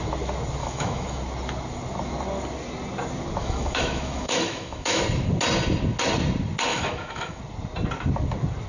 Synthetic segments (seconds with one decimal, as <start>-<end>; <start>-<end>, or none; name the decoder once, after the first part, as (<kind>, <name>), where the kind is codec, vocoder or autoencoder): 0.6-1.2 (autoencoder, DAC-VAE); 3.4-5.0; 6.7-7.4

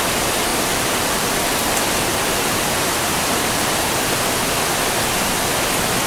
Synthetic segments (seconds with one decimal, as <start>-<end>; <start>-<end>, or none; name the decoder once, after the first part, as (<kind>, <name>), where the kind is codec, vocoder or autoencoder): 0.5-1.3 (vocoder, BigVGAN v2); 2.1-3.7

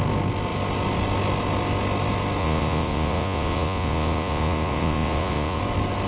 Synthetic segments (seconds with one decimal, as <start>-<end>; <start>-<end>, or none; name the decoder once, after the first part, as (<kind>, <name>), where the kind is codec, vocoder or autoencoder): 2.4-5.6 (vocoder, Vocos)

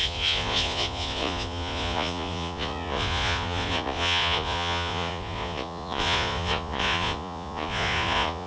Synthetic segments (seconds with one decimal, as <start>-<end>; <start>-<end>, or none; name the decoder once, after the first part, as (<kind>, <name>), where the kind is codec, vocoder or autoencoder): 0.0-8.5 (vocoder, Vocos)

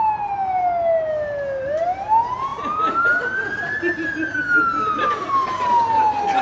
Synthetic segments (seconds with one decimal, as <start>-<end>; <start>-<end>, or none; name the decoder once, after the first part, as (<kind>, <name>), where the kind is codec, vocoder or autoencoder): none

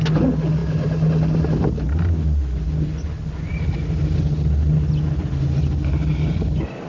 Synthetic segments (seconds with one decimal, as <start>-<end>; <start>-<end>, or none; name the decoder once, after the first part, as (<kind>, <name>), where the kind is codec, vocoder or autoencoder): none

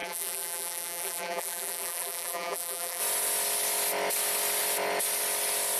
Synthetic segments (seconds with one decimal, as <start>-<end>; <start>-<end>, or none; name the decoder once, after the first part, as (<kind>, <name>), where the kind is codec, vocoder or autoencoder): 0.0-3.0 (vocoder, BigVGAN v2)